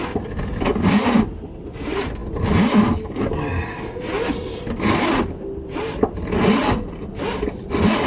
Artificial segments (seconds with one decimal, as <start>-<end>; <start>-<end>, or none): none